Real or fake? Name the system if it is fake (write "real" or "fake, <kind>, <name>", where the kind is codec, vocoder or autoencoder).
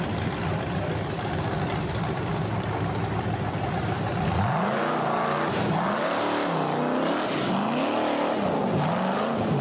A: real